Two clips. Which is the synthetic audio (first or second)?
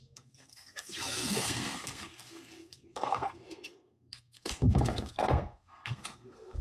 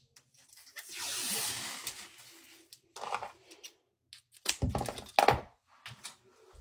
first